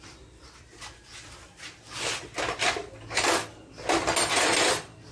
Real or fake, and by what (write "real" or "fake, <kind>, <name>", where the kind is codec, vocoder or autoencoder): real